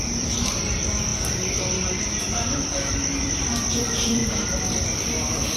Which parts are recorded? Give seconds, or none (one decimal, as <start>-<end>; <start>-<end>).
1.1-2.2; 4.2-5.6